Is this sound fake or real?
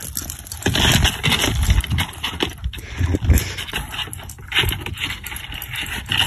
real